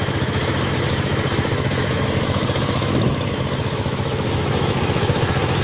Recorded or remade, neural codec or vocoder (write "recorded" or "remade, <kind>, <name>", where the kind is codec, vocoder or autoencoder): remade, autoencoder, DAC-VAE